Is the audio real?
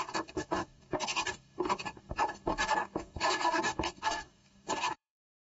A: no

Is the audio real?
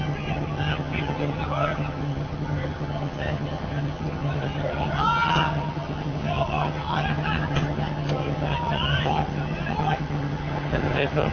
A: no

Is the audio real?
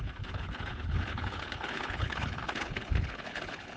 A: no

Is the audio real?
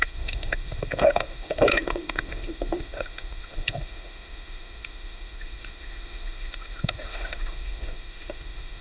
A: no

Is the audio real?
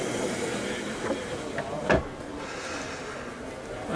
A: yes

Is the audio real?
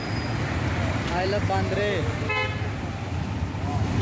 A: yes